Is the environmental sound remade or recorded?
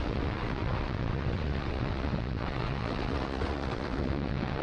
remade